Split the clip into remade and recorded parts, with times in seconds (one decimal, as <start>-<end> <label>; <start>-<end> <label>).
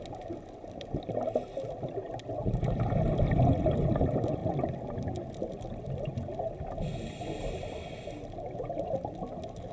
0.0-9.7 recorded